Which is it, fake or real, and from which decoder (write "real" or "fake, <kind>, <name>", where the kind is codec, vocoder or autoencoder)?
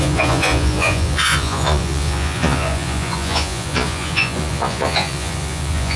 fake, vocoder, Vocos